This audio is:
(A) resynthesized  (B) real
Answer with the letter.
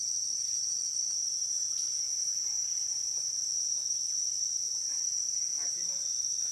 A